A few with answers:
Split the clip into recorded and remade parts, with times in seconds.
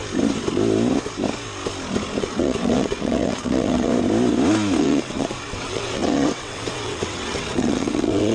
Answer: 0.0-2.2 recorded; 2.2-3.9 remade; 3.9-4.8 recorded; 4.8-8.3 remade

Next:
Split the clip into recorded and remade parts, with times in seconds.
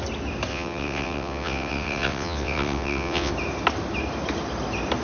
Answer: 0.0-0.5 recorded; 0.5-3.3 remade; 3.3-5.0 recorded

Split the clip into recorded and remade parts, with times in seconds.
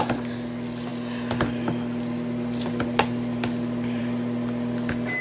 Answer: 0.0-5.2 recorded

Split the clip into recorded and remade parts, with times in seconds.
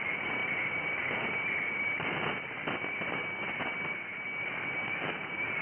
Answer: 0.0-5.6 recorded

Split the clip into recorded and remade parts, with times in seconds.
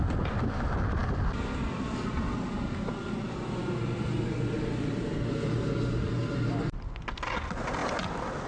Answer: 0.0-8.5 recorded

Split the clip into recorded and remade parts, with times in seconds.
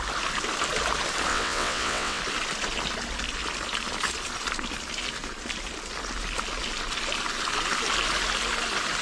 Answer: 0.0-1.3 recorded; 1.3-2.2 remade; 2.2-9.0 recorded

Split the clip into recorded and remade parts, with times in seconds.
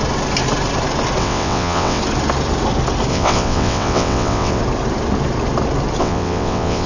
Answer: 0.0-1.2 recorded; 1.2-2.0 remade; 2.0-3.1 recorded; 3.1-4.6 remade; 4.6-6.0 recorded; 6.0-6.9 remade